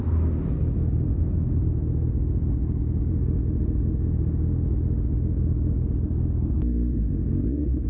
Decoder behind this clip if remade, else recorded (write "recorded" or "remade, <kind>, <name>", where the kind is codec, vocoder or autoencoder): recorded